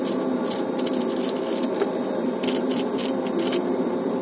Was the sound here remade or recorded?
remade